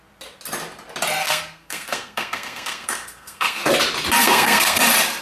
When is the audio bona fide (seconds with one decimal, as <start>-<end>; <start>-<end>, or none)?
0.0-1.2; 3.7-4.2; 4.8-5.2